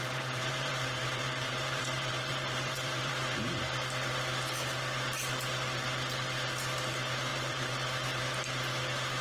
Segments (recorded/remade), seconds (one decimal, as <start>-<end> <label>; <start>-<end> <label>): 0.0-3.4 remade; 3.4-7.3 recorded; 7.3-8.2 remade; 8.2-9.2 recorded

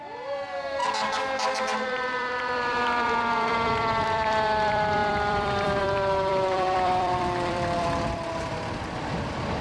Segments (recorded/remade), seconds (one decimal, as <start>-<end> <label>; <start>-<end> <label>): 0.0-0.8 remade; 0.8-1.6 recorded; 1.6-9.6 remade

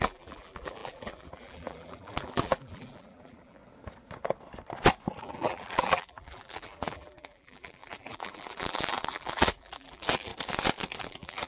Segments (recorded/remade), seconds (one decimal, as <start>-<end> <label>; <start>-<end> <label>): 0.0-3.6 remade; 3.6-5.2 recorded; 5.2-10.3 remade; 10.3-11.0 recorded; 11.0-11.5 remade